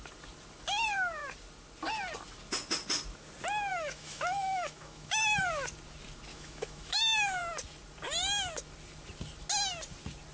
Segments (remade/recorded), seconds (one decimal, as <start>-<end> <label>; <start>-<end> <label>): 0.0-3.7 recorded; 3.7-5.4 remade; 5.4-6.3 recorded; 6.3-7.0 remade; 7.0-10.3 recorded